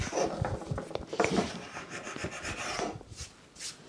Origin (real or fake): real